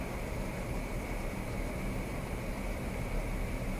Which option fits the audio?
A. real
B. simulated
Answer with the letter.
A